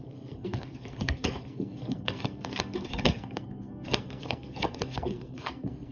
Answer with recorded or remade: remade